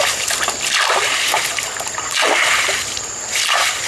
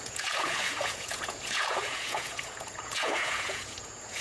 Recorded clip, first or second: first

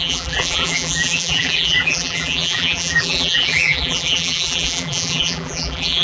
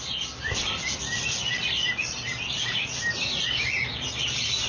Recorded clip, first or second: second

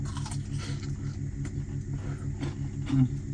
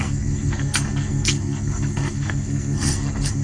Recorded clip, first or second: first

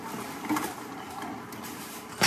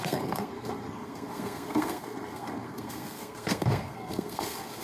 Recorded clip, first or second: first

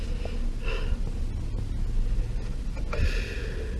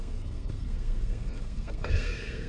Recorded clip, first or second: first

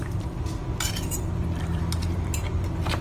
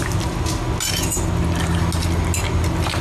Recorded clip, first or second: second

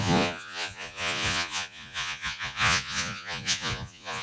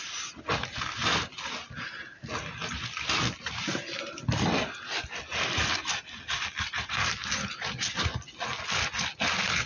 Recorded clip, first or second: second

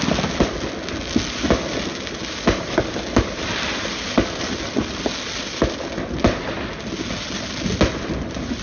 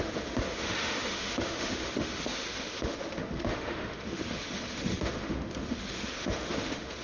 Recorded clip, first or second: first